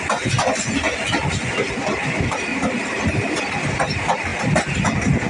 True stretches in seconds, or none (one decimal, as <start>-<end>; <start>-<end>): 0.0-2.5; 3.4-5.3